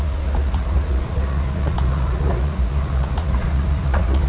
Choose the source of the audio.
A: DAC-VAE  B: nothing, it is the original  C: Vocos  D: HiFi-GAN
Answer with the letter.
C